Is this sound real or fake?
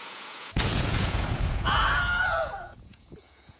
fake